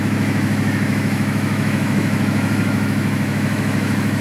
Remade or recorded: remade